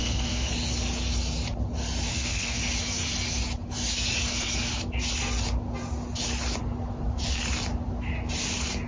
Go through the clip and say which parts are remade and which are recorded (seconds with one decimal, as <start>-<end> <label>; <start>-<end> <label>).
0.0-0.5 remade; 0.5-2.1 recorded; 2.1-2.6 remade; 2.6-8.9 recorded